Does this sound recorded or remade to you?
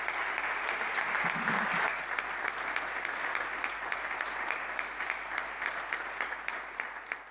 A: recorded